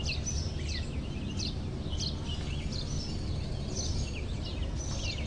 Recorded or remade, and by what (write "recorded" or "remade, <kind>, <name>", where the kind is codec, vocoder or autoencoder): recorded